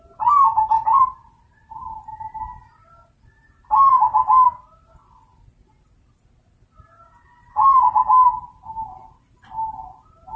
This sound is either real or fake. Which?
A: real